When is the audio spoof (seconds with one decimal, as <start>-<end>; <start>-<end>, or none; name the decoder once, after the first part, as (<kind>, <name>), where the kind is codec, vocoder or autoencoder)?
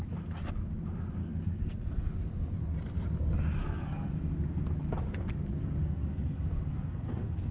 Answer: 1.2-2.1 (codec, SNAC); 3.6-4.1; 5.8-7.5